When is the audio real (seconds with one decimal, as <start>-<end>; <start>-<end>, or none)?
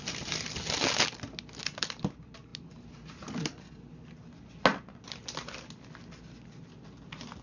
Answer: 0.0-7.4